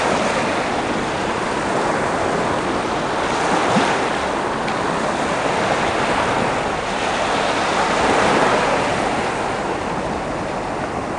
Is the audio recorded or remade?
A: recorded